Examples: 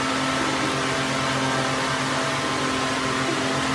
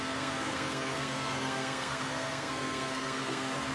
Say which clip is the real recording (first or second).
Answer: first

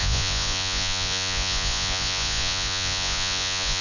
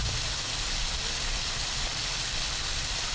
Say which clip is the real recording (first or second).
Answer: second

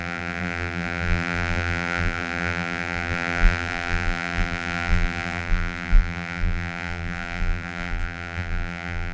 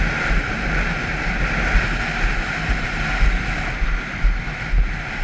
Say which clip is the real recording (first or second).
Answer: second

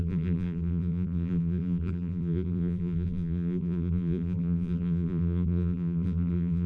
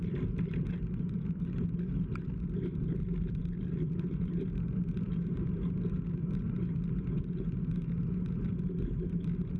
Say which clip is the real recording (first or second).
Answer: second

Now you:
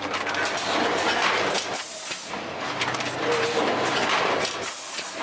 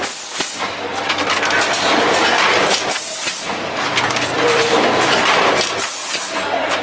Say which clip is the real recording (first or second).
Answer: first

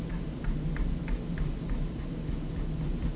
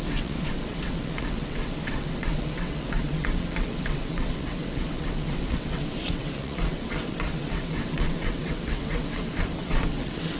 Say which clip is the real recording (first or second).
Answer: first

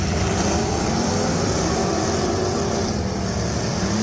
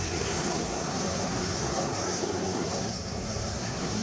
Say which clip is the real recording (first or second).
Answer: first